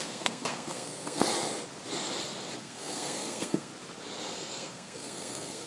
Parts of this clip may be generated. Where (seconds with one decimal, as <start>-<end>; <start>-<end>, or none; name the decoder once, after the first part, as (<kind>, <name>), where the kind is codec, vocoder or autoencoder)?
0.0-1.3 (codec, SNAC); 2.6-3.7; 4.3-5.7